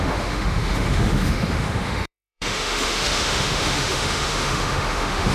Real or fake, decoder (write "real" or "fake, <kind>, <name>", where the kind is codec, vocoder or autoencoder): fake, autoencoder, DAC-VAE